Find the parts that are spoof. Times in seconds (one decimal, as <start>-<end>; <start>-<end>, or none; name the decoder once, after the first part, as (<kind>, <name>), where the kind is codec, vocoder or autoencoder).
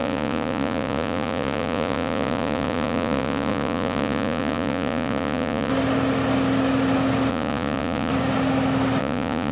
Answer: 0.0-5.7 (vocoder, Vocos); 7.3-8.1; 9.0-9.5